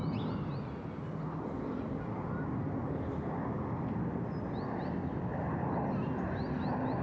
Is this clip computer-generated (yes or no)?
no